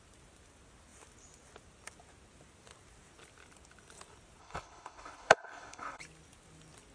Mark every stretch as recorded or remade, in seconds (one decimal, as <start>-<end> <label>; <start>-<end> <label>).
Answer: 0.0-4.4 recorded; 4.4-6.0 remade; 6.0-6.9 recorded